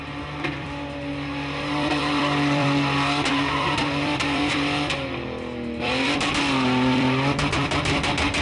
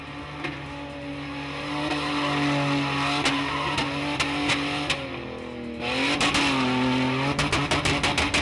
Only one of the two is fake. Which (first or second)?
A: first